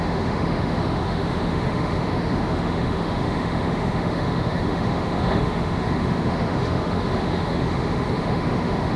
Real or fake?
fake